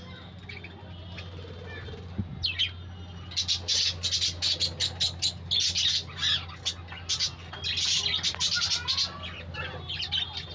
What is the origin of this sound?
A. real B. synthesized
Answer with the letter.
A